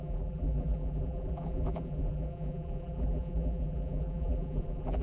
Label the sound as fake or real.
fake